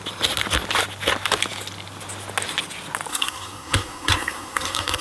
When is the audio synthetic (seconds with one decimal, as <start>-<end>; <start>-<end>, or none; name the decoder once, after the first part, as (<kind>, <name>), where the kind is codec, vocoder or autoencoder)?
3.1-5.0 (codec, SNAC)